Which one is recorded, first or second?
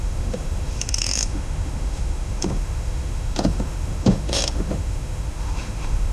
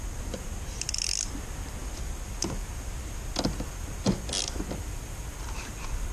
second